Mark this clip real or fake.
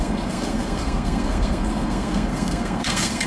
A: fake